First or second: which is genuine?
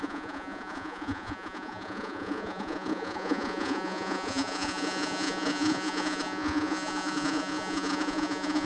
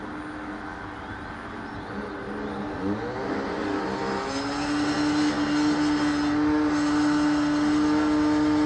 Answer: second